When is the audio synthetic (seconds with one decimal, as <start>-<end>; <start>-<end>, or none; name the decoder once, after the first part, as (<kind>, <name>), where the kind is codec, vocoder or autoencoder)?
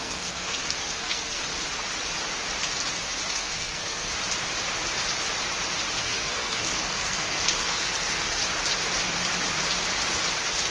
0.0-1.4 (codec, SNAC); 3.3-4.1; 6.0-8.4